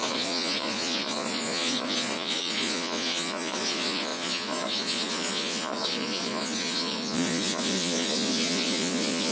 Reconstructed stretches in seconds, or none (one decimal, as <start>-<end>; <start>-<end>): 0.0-9.3